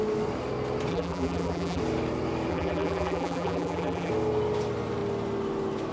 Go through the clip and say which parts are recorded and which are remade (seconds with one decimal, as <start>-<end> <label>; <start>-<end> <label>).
0.0-0.9 recorded; 0.9-1.8 remade; 1.8-2.5 recorded; 2.5-4.1 remade; 4.1-5.9 recorded